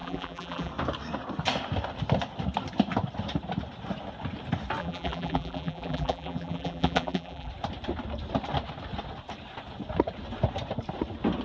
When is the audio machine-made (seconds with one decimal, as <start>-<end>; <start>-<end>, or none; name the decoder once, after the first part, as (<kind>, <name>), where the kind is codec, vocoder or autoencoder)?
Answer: 0.0-0.7 (vocoder, BigVGAN v2); 4.8-7.5